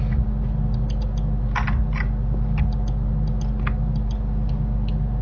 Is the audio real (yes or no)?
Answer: yes